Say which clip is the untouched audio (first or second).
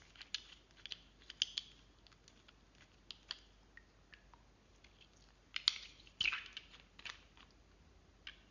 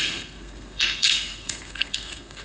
first